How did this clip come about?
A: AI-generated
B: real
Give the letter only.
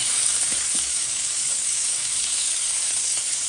A